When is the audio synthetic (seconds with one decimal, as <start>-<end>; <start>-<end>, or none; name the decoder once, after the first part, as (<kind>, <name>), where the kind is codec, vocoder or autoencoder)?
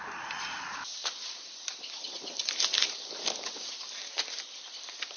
0.0-5.2 (vocoder, BigVGAN v2)